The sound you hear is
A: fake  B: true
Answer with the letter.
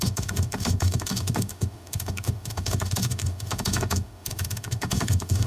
A